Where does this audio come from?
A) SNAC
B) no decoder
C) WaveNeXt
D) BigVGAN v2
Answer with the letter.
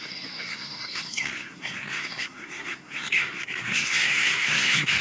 A